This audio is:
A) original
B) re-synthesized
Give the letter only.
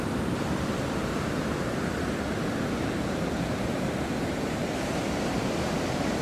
B